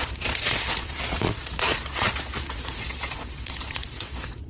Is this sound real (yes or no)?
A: no